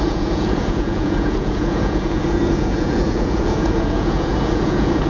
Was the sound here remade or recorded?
remade